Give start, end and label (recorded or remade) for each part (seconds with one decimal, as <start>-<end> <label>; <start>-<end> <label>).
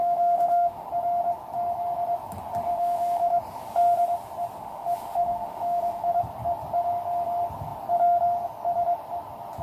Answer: 0.0-0.9 remade; 0.9-2.7 recorded; 2.7-3.4 remade; 3.4-4.6 recorded; 4.6-6.2 remade; 6.2-9.6 recorded